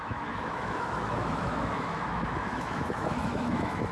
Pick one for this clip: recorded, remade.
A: remade